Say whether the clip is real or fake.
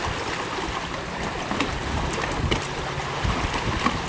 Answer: real